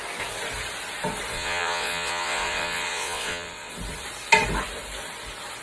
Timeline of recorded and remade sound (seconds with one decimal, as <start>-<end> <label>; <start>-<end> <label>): 0.0-1.3 recorded; 1.3-3.7 remade; 3.7-5.6 recorded